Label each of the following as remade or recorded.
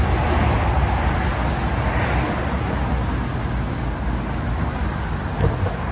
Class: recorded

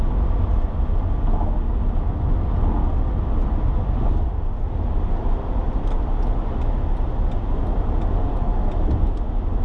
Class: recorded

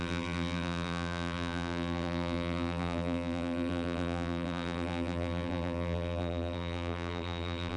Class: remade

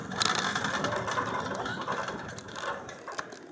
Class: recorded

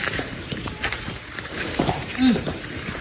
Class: remade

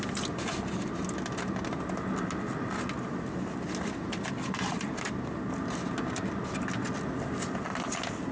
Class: recorded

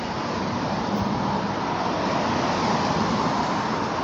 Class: recorded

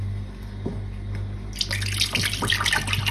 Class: recorded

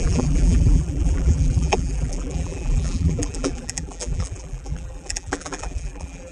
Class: remade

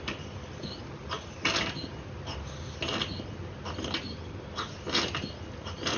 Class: recorded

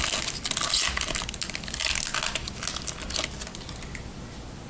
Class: recorded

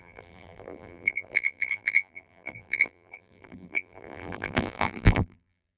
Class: remade